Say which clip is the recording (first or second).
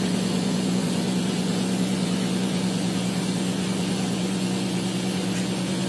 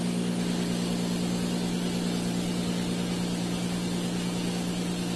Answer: second